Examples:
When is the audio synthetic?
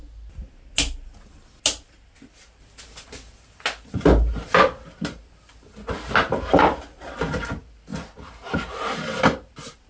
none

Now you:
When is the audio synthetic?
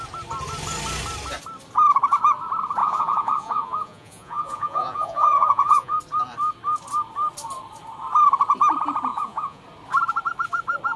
2.8-6.0; 9.1-9.6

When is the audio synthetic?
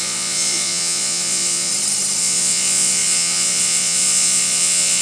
0.0-1.7; 2.2-5.0